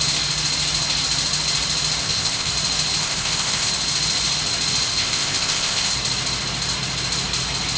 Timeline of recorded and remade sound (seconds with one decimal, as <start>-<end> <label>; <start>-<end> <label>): 0.0-2.0 recorded; 2.0-2.5 remade; 2.5-3.0 recorded; 3.0-3.7 remade; 3.7-5.0 recorded; 5.0-5.9 remade; 5.9-7.8 recorded